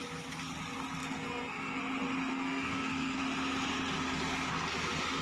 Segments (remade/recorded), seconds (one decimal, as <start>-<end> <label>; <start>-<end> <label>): 0.0-1.0 recorded; 1.0-1.8 remade; 1.8-2.3 recorded; 2.3-3.2 remade; 3.2-5.2 recorded